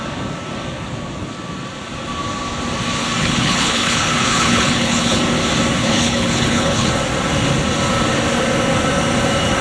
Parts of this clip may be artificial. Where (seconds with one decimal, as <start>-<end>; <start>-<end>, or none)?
3.2-5.2; 5.8-6.9